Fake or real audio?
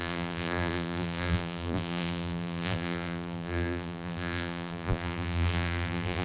fake